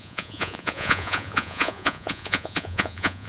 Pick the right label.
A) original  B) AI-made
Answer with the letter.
B